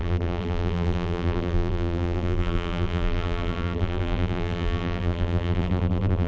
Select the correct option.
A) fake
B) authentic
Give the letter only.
A